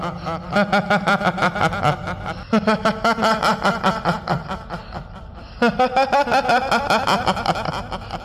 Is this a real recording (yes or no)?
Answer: yes